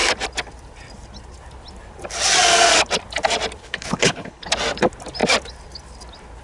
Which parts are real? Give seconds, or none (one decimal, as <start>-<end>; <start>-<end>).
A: 0.0-3.6; 4.5-6.4